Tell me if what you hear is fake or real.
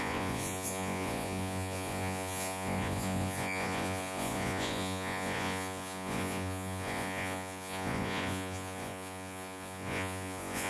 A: fake